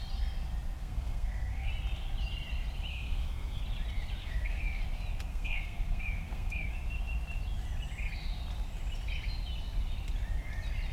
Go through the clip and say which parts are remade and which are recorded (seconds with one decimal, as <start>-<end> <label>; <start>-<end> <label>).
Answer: 0.0-0.8 recorded; 0.8-1.7 remade; 1.7-2.9 recorded; 2.9-3.6 remade; 3.6-4.2 recorded; 4.2-4.8 remade; 4.8-5.3 recorded; 5.3-6.7 remade; 6.7-10.9 recorded